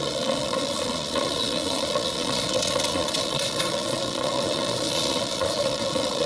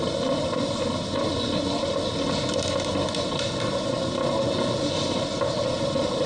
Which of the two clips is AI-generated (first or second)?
first